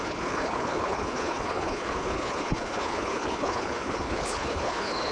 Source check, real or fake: fake